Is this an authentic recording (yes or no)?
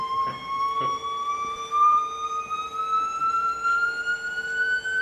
no